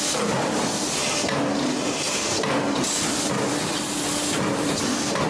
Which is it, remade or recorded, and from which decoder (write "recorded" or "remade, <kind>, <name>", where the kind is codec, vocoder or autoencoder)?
recorded